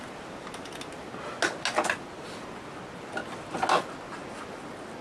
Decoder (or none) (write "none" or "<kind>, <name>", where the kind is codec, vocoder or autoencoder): none